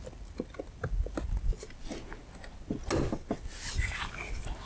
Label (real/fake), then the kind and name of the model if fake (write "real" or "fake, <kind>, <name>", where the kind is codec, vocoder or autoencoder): real